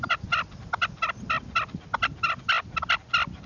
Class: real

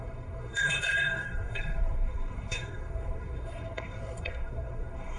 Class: fake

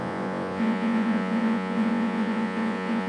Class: fake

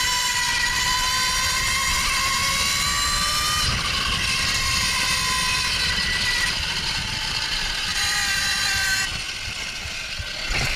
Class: real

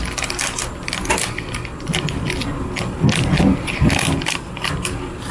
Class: real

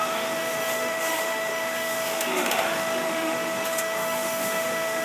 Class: fake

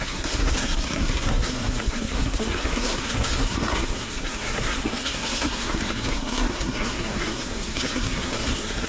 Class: fake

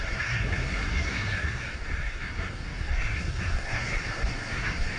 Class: fake